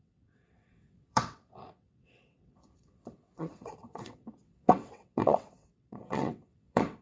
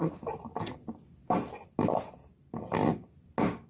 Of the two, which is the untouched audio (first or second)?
second